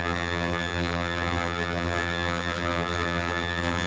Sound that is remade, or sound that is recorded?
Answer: remade